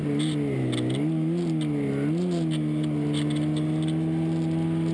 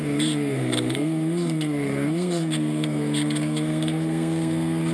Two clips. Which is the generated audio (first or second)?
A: second